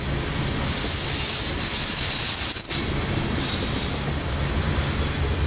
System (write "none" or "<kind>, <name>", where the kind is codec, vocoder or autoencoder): none